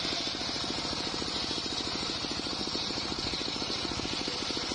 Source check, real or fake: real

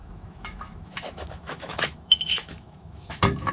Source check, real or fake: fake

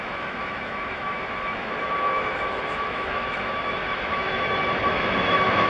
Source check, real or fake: fake